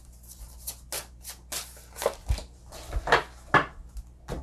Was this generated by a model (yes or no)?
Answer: no